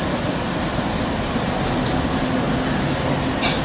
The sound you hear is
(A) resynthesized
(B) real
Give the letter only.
B